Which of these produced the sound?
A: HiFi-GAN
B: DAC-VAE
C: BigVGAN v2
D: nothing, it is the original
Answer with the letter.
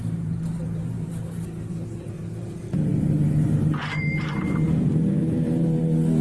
C